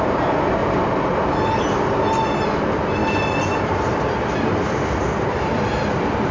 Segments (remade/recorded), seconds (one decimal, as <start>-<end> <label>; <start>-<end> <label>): 0.0-0.6 recorded; 0.6-1.4 remade; 1.4-3.0 recorded; 3.0-5.4 remade; 5.4-6.3 recorded